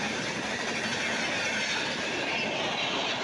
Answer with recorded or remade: recorded